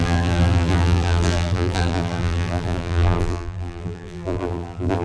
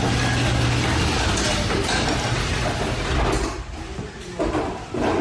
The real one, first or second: second